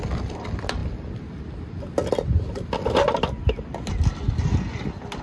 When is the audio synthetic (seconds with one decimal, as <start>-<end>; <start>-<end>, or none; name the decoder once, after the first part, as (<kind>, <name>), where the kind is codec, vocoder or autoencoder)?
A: none